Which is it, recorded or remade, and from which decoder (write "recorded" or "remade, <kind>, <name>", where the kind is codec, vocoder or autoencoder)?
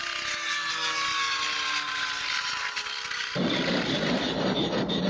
recorded